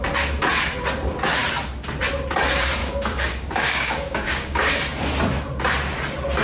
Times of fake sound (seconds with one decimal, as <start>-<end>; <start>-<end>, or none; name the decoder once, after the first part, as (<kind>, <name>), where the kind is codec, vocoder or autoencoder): 2.8-4.7 (codec, DAC)